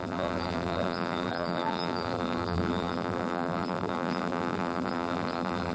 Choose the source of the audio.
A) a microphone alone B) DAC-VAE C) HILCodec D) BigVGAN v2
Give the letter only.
D